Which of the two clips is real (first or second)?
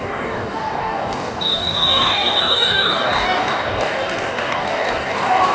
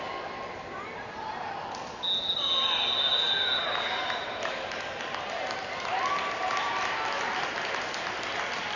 second